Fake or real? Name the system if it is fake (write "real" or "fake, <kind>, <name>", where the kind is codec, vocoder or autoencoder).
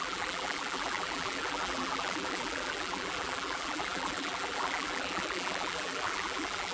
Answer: fake, vocoder, BigVGAN v2